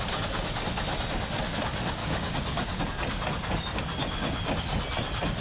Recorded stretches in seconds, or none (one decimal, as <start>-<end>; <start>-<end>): 0.0-2.0; 2.8-5.4